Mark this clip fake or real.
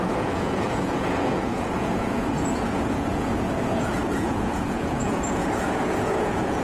fake